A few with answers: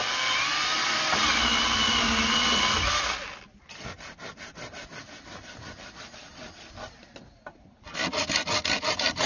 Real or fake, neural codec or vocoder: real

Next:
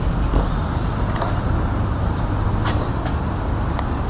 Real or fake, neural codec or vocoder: real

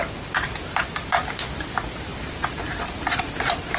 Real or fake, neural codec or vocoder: real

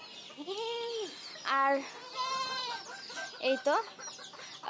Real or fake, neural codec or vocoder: real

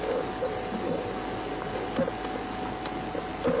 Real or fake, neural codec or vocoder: real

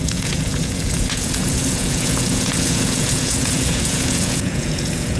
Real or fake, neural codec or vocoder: fake, vocoder, Vocos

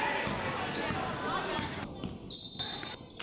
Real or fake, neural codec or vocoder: real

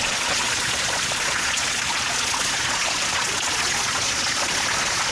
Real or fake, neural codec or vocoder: fake, vocoder, Vocos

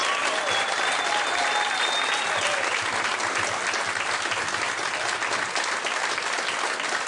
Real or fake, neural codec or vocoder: real